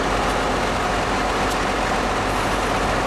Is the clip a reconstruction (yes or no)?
no